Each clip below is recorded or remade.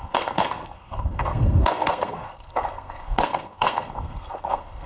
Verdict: remade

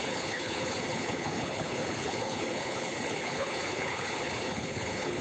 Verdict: remade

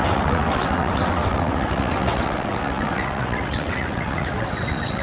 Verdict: remade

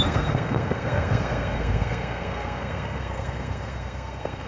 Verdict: remade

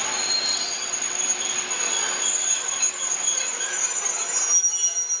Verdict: recorded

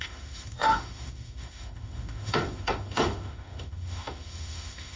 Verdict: remade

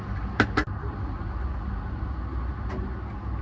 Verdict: recorded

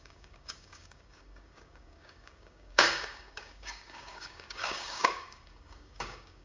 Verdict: remade